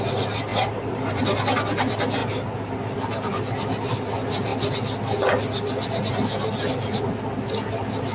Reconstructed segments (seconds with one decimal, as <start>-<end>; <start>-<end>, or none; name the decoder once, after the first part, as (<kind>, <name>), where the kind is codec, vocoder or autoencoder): 0.5-1.2 (vocoder, BigVGAN v2); 2.2-2.8